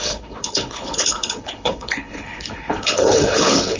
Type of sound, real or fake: fake